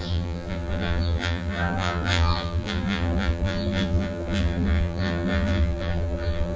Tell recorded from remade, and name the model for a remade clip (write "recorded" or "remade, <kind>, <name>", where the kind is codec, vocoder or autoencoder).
remade, vocoder, BigVGAN v2